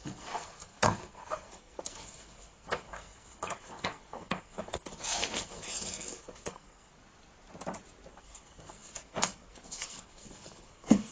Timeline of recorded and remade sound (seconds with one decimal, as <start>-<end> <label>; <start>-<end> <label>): 0.0-6.9 remade; 6.9-8.1 recorded; 8.1-11.1 remade